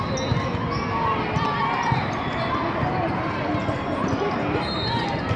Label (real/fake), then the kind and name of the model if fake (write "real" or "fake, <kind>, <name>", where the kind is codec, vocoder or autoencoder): real